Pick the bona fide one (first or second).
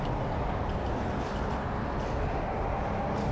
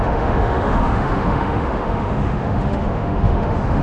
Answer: first